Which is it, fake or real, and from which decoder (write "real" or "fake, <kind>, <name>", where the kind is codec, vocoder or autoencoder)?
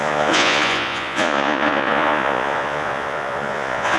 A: fake, vocoder, Vocos